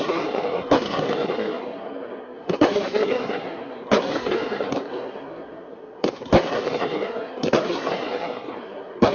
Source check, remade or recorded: remade